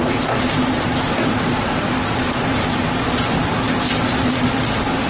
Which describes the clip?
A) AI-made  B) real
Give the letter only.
B